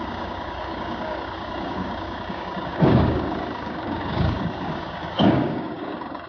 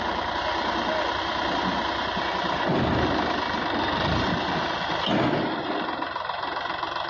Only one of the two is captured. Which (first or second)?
second